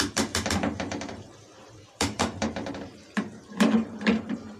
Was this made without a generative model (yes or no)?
no